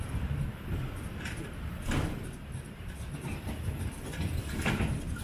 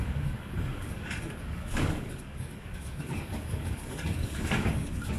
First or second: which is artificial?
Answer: second